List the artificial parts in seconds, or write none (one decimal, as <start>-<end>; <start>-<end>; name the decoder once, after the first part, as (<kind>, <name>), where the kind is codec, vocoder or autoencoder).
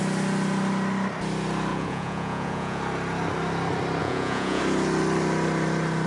1.7-2.8 (vocoder, Vocos); 4.0-4.6